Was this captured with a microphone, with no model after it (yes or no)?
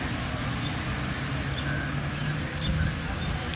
yes